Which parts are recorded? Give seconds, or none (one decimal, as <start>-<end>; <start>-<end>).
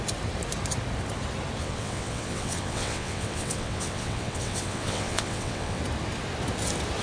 0.0-1.6; 5.8-7.0